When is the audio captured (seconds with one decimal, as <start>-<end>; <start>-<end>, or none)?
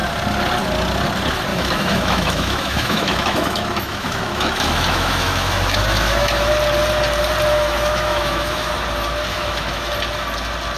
0.0-1.5; 6.5-7.5; 8.7-9.3; 9.9-10.8